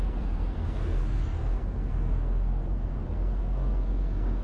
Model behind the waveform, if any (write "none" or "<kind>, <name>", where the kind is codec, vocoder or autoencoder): codec, SNAC